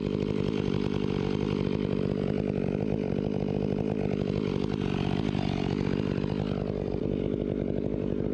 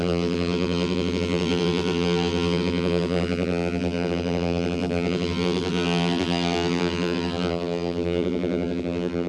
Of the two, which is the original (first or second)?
first